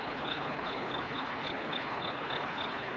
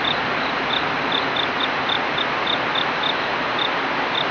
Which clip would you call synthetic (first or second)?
first